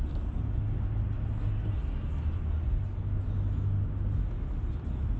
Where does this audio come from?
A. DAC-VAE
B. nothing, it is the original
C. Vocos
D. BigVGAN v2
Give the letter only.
B